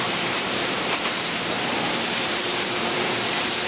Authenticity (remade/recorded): remade